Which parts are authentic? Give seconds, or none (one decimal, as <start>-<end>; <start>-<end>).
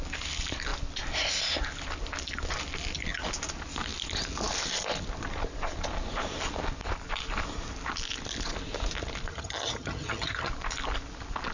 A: 0.0-9.3; 10.5-11.5